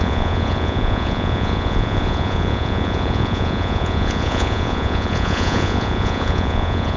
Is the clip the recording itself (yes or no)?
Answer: no